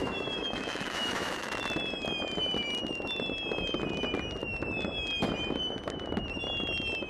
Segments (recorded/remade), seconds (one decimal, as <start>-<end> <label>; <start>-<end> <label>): 0.0-1.5 remade; 1.5-7.1 recorded